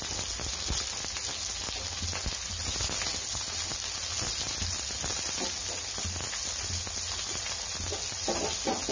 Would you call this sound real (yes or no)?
yes